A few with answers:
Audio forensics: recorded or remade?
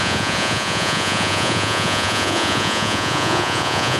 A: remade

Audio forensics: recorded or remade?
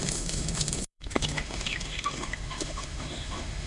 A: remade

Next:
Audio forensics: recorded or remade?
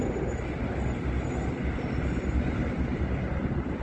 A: recorded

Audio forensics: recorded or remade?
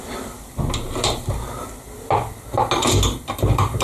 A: recorded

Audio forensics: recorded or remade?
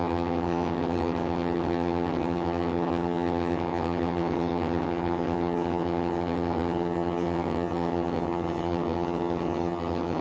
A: remade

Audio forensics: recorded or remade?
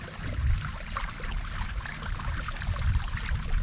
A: recorded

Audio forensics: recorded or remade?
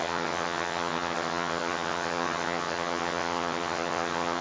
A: remade